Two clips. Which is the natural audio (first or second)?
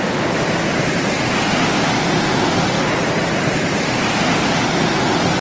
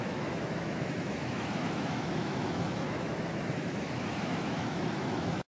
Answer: first